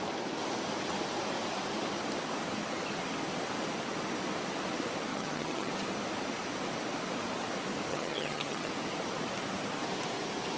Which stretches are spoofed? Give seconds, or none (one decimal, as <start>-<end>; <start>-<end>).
5.1-5.7; 7.9-8.7